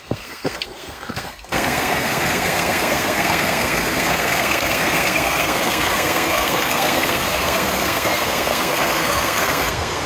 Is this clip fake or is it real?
fake